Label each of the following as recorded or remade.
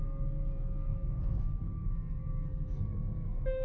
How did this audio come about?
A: remade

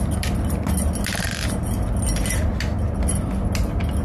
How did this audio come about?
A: recorded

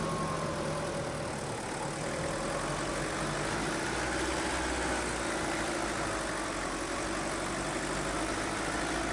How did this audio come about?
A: recorded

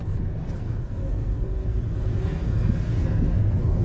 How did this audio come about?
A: remade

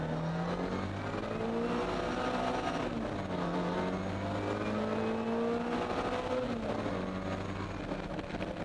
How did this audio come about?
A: recorded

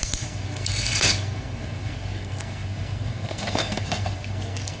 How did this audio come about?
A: remade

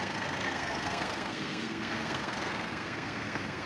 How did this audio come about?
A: remade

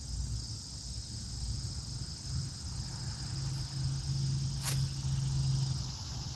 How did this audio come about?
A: recorded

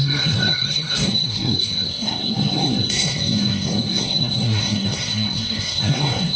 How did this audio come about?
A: remade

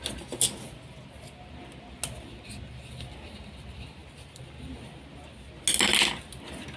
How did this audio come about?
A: recorded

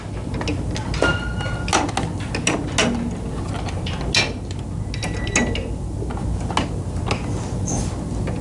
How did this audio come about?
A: recorded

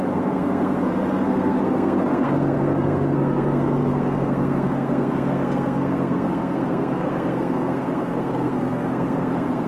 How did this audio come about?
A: remade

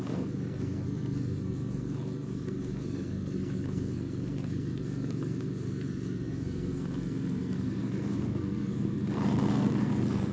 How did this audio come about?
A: remade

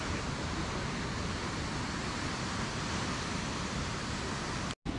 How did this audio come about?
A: recorded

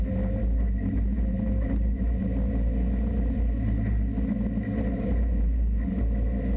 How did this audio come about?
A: recorded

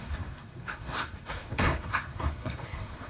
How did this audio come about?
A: remade